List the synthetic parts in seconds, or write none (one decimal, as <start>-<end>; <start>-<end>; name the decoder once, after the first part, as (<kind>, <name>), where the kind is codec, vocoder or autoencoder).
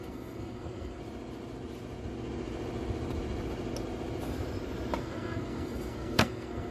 0.0-1.0 (codec, SNAC); 5.0-6.7